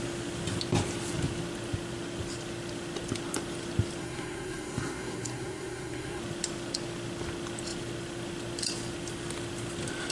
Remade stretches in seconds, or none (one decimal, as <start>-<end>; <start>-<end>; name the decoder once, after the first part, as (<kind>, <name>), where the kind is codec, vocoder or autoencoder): 4.0-6.2 (codec, SNAC)